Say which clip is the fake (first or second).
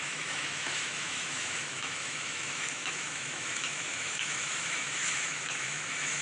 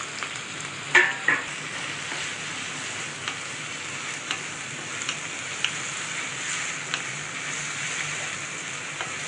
first